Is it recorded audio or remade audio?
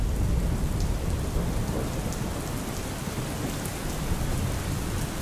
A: recorded